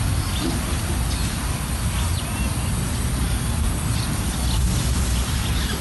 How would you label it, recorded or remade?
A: recorded